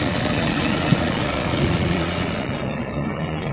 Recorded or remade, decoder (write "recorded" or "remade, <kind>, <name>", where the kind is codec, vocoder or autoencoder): remade, vocoder, Vocos